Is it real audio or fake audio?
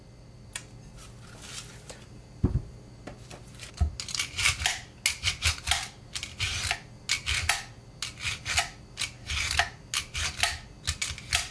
real